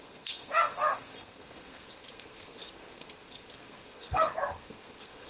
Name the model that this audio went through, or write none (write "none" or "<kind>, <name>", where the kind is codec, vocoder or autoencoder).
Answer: codec, SNAC